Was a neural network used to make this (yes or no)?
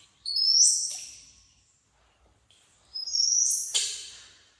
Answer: no